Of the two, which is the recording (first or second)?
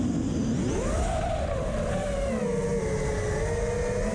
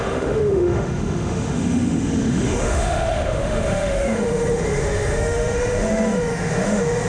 first